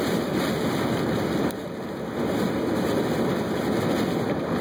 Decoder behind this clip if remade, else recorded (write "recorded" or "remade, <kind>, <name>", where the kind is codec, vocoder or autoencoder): recorded